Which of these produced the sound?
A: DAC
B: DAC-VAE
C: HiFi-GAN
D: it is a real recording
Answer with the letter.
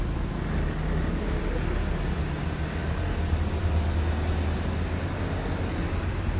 D